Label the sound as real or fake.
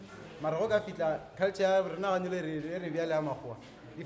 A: real